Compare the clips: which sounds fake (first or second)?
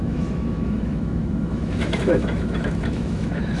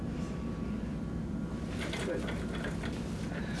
first